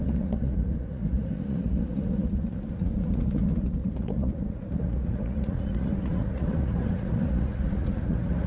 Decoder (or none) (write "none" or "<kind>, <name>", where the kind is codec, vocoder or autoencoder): vocoder, Vocos